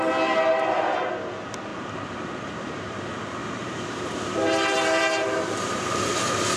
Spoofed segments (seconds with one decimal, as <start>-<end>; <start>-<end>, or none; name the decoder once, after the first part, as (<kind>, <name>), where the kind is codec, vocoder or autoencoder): 1.7-3.0 (vocoder, BigVGAN v2); 3.4-5.9